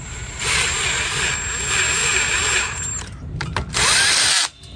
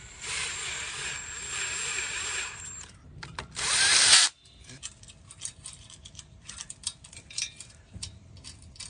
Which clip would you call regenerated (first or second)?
second